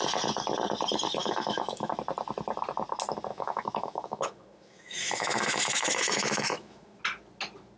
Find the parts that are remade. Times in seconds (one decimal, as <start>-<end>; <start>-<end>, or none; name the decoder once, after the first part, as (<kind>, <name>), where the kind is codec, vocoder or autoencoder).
1.2-1.9 (autoencoder, DAC-VAE); 3.3-7.0